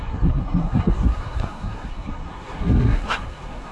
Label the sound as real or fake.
fake